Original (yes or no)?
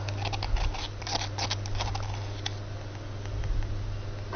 yes